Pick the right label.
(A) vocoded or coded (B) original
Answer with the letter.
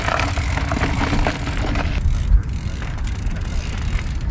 B